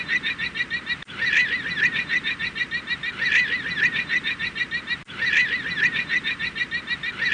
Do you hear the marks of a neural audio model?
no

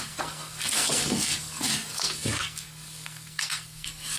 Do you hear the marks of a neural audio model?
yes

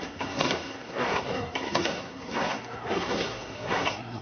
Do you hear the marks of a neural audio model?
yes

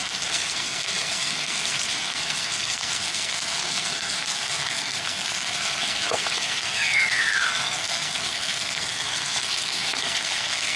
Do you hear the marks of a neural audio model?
yes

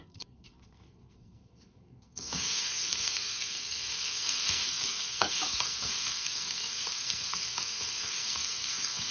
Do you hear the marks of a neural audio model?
yes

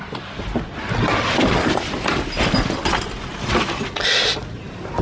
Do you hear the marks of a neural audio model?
no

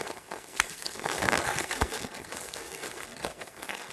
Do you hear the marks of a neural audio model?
yes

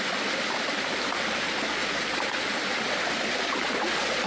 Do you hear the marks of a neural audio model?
no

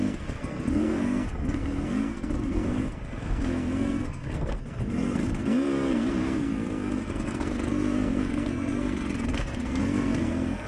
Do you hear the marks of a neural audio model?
yes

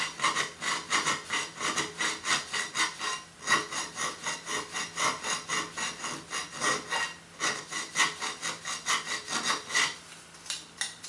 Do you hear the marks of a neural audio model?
no